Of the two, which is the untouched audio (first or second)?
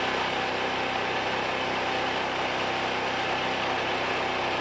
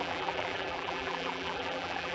first